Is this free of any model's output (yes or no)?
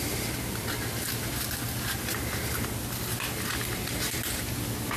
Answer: yes